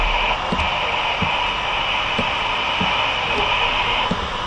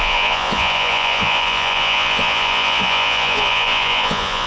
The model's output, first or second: second